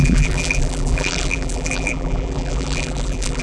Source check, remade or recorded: remade